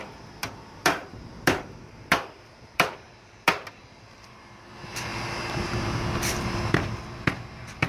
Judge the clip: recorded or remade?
remade